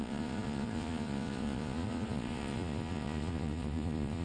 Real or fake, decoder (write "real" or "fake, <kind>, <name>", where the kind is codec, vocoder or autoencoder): fake, vocoder, Vocos